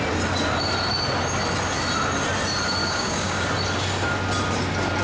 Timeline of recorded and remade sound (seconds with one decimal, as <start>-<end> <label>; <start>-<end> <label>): 0.0-2.8 recorded; 2.8-3.4 remade; 3.4-5.0 recorded